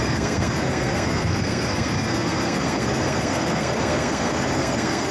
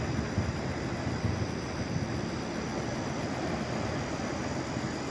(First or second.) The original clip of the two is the second